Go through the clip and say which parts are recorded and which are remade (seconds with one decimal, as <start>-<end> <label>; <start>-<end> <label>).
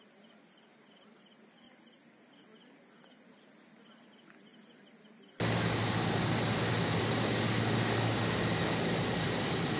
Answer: 0.0-9.8 recorded